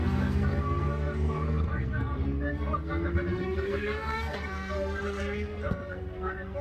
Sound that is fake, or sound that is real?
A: fake